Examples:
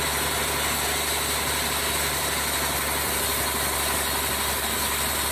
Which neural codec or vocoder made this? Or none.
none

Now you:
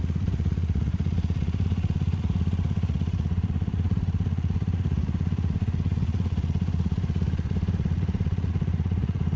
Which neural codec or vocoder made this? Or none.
vocoder, Vocos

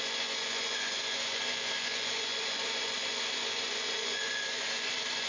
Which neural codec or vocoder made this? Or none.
vocoder, Vocos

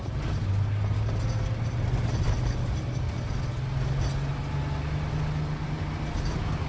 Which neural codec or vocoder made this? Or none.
none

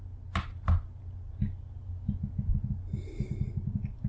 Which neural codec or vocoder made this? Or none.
none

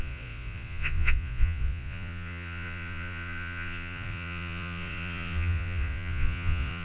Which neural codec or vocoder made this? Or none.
vocoder, Vocos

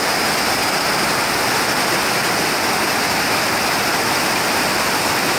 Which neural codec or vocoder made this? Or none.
none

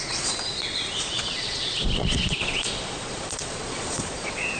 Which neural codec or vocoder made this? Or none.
vocoder, Vocos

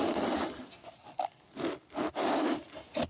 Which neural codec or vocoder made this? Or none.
none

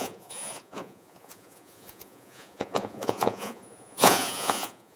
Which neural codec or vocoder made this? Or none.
vocoder, Vocos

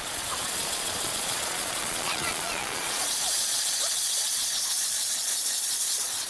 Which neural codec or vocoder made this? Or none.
vocoder, Vocos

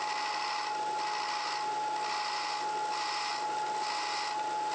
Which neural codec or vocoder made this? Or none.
none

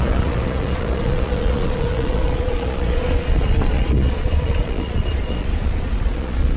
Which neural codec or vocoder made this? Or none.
vocoder, Vocos